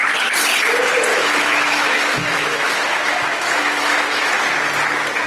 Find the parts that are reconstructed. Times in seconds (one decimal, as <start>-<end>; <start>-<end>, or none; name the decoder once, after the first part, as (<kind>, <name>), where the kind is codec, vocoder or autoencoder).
1.1-4.3 (autoencoder, DAC-VAE)